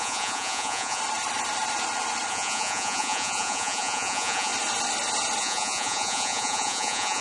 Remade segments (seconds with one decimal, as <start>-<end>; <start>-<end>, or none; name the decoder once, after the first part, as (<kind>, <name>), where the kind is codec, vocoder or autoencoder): 0.0-1.0 (vocoder, Vocos); 2.3-4.5; 5.4-7.2